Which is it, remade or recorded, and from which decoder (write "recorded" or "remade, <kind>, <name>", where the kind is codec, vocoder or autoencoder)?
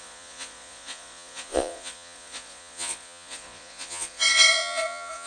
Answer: remade, vocoder, Vocos